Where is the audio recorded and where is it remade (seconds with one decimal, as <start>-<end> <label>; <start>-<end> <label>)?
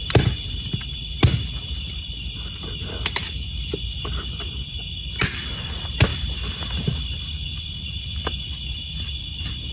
0.0-9.7 recorded